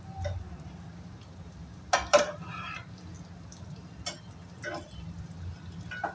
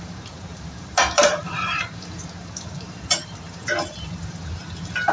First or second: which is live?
first